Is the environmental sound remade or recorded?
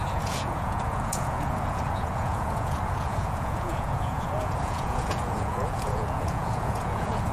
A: remade